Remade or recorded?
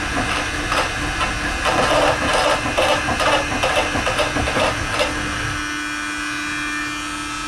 recorded